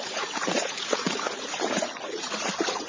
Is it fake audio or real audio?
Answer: fake